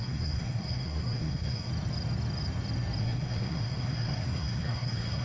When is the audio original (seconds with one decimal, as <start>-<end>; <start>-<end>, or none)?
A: 1.7-3.0